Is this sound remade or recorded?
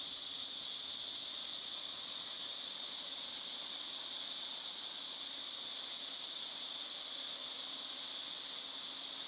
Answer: recorded